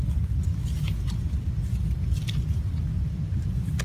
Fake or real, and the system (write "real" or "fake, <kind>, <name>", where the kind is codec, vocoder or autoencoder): real